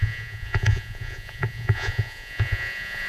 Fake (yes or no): yes